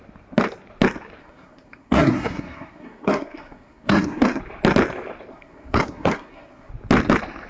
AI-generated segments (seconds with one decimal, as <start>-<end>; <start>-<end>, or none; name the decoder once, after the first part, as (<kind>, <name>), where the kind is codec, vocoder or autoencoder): 1.2-4.4 (codec, SNAC); 5.3-6.7